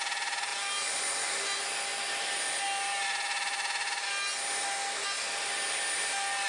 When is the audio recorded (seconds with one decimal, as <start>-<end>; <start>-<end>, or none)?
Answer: 0.0-6.5